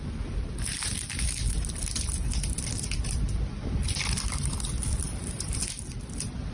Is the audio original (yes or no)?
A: no